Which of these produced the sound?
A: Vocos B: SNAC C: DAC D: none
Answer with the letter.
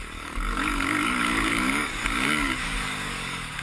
C